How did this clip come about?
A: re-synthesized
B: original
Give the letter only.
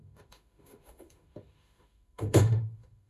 A